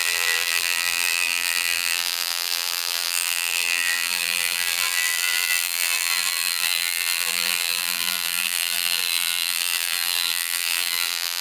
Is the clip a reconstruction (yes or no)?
yes